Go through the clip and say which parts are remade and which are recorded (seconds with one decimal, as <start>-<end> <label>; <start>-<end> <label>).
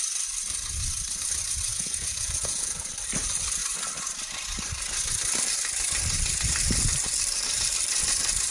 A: 0.0-1.7 recorded; 1.7-2.9 remade; 2.9-8.5 recorded